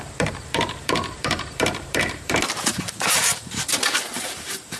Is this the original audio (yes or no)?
no